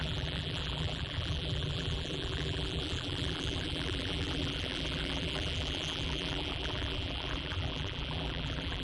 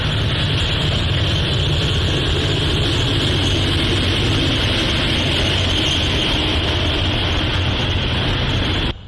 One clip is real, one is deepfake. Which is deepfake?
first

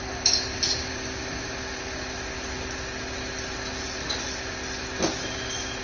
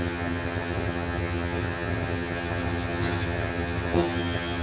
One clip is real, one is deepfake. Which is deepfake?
second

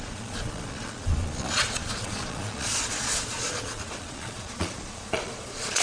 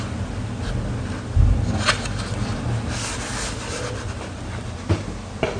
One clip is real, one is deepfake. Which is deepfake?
first